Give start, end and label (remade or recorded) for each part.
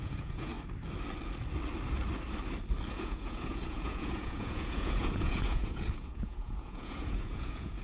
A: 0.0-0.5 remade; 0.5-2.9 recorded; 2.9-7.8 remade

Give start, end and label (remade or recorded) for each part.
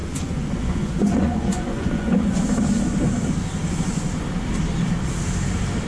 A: 0.0-2.4 remade; 2.4-5.9 recorded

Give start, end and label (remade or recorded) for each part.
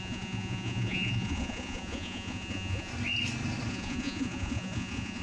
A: 0.0-2.9 remade; 2.9-3.7 recorded; 3.7-5.2 remade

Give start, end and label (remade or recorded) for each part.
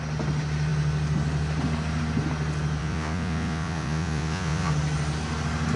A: 0.0-2.8 recorded; 2.8-4.7 remade; 4.7-5.8 recorded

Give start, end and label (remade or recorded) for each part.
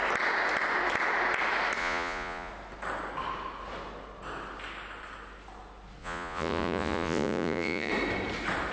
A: 0.0-1.8 recorded; 1.8-2.5 remade; 2.5-6.0 recorded; 6.0-7.9 remade; 7.9-8.7 recorded